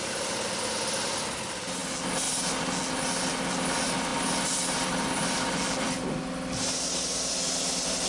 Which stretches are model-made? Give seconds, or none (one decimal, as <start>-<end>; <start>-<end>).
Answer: none